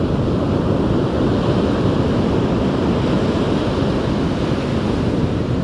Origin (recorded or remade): recorded